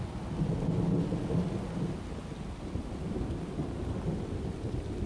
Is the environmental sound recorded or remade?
recorded